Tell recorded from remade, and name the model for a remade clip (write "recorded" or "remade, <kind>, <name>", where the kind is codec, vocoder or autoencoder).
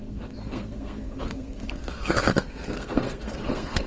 remade, codec, SNAC